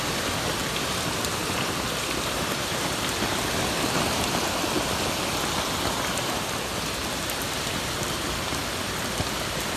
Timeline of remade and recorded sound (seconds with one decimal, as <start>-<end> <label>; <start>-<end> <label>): 0.0-7.0 recorded; 7.0-8.6 remade; 8.6-9.8 recorded